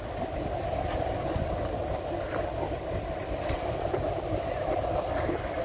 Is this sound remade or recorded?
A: recorded